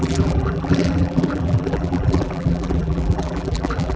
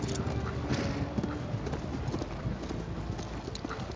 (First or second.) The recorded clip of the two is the second